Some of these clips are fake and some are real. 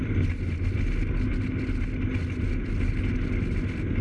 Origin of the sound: real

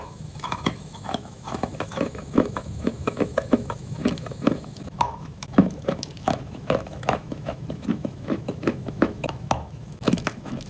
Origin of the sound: fake